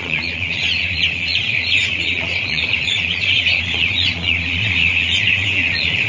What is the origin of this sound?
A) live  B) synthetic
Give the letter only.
B